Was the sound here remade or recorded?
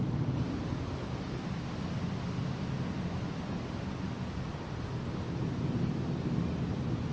recorded